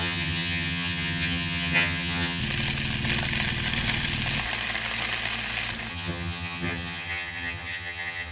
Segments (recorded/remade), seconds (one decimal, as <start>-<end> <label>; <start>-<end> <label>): 0.0-2.4 remade; 2.4-5.9 recorded; 5.9-8.3 remade